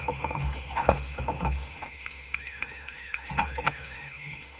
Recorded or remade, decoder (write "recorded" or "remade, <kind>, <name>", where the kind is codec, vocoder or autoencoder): remade, autoencoder, DAC-VAE